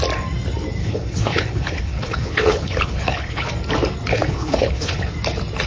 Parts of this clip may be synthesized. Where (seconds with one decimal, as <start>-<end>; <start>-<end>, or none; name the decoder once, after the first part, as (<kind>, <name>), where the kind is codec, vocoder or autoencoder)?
0.8-3.5 (codec, HILCodec); 4.1-5.1